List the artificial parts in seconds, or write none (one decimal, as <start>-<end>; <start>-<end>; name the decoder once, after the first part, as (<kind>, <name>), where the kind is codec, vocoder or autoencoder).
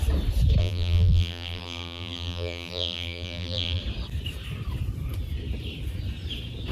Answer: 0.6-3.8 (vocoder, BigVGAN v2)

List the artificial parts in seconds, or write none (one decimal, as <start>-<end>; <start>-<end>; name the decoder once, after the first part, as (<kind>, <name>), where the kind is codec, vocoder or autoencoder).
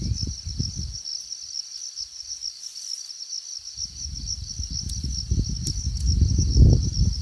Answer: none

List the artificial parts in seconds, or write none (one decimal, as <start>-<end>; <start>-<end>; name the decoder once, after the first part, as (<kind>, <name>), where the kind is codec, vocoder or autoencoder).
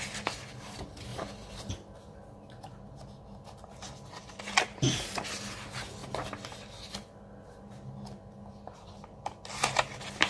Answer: none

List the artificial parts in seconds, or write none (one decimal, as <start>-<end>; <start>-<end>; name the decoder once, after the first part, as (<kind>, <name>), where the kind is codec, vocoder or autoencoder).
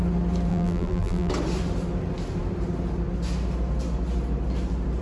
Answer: 0.5-1.3 (vocoder, BigVGAN v2)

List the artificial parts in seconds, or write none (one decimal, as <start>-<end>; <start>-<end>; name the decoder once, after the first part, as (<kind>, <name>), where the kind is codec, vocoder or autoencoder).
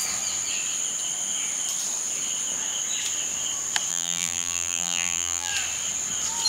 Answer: 3.9-5.5 (vocoder, BigVGAN v2)